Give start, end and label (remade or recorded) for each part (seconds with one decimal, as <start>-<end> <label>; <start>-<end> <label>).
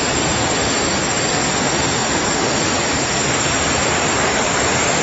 0.0-5.0 recorded